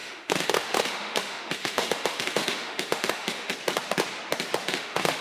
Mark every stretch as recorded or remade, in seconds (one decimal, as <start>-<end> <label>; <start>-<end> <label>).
0.0-3.5 remade; 3.5-4.7 recorded; 4.7-5.2 remade

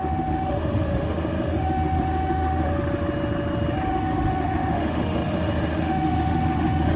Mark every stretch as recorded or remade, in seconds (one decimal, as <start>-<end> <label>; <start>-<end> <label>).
0.0-2.7 remade; 2.7-3.9 recorded; 3.9-7.0 remade